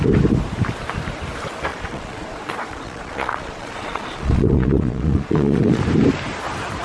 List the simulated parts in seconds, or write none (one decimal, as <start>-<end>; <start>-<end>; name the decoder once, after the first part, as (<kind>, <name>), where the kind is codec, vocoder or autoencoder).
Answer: 1.7-5.8 (vocoder, Vocos)